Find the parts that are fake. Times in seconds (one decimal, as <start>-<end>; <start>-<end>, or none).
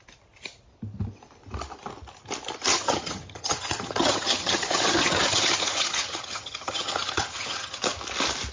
2.7-7.8